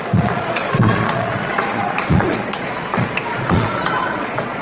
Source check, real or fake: fake